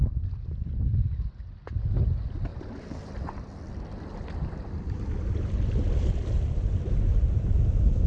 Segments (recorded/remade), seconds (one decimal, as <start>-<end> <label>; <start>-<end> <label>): 0.0-8.1 recorded